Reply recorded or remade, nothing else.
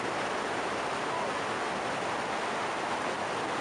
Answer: recorded